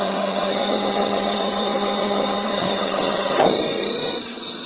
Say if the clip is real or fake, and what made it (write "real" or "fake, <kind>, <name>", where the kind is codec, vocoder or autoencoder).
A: fake, vocoder, HiFi-GAN